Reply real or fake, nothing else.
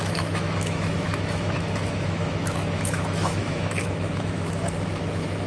fake